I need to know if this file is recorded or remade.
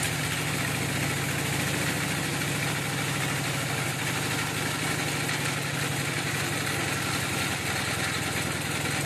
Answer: recorded